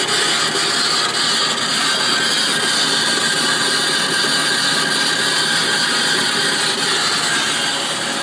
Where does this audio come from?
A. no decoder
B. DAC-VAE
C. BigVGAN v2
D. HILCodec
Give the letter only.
A